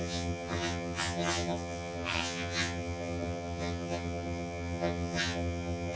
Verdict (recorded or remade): remade